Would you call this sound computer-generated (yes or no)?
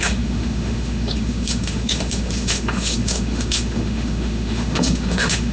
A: yes